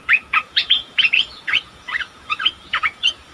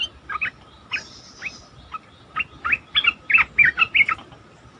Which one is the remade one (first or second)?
first